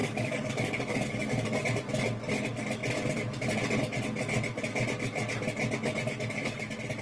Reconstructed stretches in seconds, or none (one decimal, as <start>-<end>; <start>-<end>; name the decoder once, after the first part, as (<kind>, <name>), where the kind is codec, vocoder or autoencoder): 0.0-1.6 (codec, DAC)